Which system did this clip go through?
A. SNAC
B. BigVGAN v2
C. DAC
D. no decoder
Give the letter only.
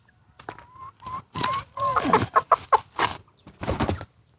B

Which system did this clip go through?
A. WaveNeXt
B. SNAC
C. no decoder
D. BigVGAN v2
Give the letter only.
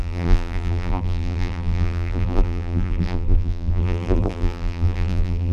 D